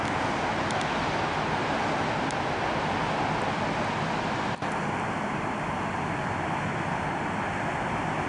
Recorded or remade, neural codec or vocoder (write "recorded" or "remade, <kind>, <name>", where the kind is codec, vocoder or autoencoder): recorded